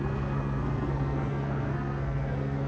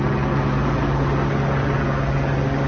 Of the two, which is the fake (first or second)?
first